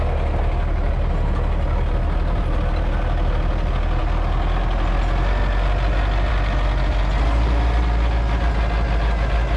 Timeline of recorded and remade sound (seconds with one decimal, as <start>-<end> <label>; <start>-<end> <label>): 0.0-9.6 recorded